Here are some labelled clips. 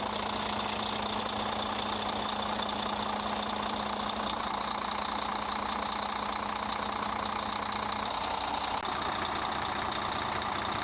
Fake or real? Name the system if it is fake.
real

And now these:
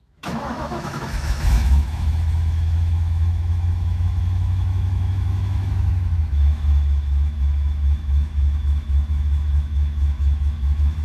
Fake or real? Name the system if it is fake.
fake, autoencoder, DAC-VAE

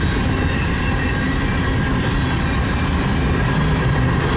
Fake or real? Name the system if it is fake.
real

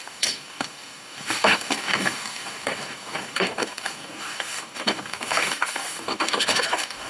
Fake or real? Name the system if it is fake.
fake, codec, DAC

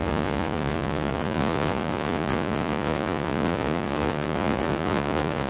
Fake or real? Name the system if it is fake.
fake, vocoder, Vocos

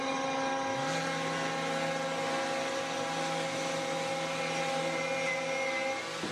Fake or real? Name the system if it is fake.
real